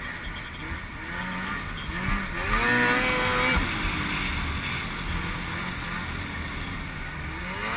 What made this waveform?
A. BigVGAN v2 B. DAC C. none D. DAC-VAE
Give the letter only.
C